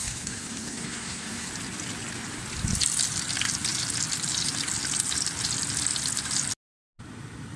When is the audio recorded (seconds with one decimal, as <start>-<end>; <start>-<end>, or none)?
1.5-7.6